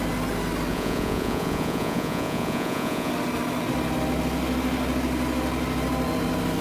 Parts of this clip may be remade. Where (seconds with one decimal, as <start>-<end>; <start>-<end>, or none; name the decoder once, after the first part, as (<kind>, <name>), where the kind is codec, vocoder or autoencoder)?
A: 0.7-3.1 (vocoder, Vocos)